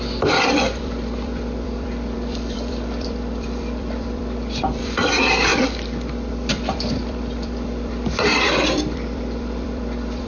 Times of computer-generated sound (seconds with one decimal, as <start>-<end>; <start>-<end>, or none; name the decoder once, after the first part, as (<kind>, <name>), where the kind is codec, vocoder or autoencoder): 0.0-5.5 (vocoder, BigVGAN v2); 6.3-10.3